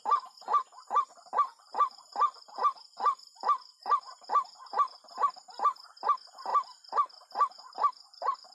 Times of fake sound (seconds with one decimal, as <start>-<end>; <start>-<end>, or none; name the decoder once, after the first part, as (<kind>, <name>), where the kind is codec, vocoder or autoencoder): 0.7-5.4 (vocoder, BigVGAN v2); 6.5-8.5